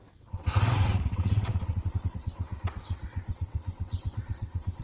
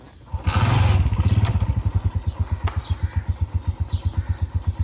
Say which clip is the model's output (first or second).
first